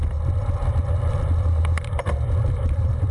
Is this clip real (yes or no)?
yes